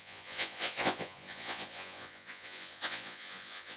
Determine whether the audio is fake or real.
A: fake